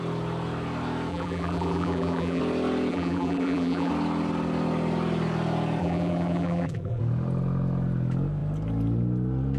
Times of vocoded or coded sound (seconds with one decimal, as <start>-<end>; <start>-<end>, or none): 1.1-2.4; 2.9-3.9; 5.8-7.0